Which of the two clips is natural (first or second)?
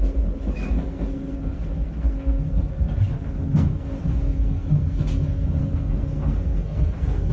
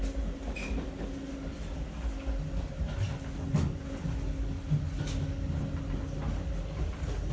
second